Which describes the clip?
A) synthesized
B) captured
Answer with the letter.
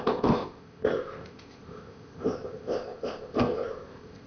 A